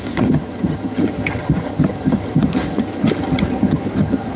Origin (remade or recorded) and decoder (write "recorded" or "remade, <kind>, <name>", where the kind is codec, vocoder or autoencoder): remade, vocoder, HiFi-GAN